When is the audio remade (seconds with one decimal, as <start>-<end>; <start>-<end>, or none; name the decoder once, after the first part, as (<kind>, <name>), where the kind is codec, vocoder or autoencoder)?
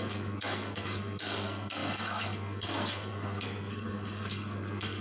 0.0-5.0 (codec, SNAC)